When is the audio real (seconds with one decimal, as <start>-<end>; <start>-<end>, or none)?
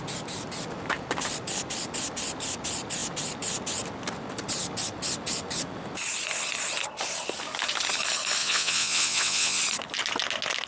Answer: 0.0-8.4; 9.6-10.7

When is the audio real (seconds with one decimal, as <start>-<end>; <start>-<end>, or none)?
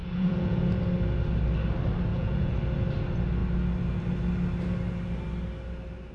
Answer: 0.8-2.1; 2.6-6.1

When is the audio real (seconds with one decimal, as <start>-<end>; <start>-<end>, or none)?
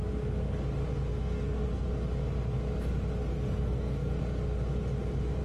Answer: 0.0-1.1; 1.9-3.3; 4.1-5.4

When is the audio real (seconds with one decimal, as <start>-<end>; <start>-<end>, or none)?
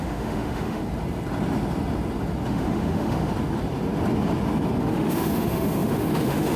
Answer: 0.8-2.5; 3.3-4.8